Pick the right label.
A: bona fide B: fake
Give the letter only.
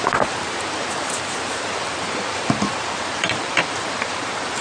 B